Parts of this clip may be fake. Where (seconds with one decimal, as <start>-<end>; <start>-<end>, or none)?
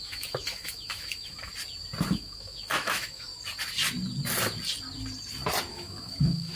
0.0-1.5; 2.1-3.3; 5.7-6.6